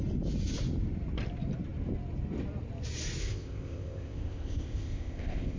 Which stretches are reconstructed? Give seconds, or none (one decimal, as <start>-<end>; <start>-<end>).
3.2-5.6